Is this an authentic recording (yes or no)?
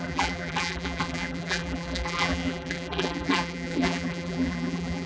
no